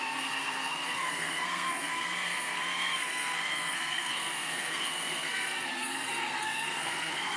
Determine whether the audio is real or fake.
fake